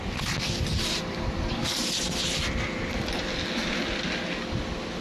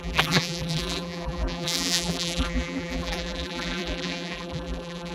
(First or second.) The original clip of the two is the first